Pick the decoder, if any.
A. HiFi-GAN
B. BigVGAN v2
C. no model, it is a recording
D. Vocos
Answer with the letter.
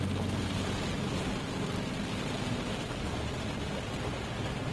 C